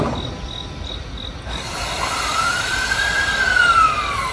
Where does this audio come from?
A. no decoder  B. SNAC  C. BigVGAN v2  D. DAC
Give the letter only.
A